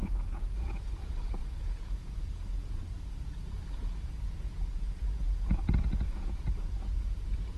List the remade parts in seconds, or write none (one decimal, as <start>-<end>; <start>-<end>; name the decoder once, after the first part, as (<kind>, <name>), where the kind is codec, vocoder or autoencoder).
0.0-7.6 (vocoder, Vocos)